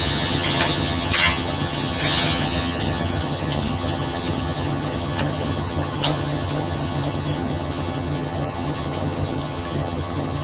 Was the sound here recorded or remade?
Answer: remade